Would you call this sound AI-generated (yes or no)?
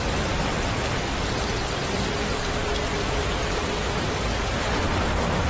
yes